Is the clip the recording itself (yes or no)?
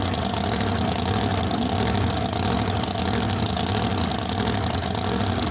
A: yes